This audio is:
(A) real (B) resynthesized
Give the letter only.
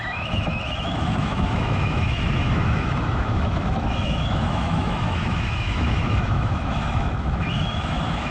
B